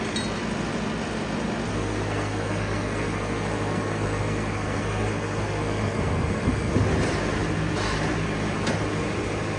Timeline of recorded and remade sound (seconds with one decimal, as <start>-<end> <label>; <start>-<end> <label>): 0.0-1.7 recorded; 1.7-6.7 remade; 6.7-9.6 recorded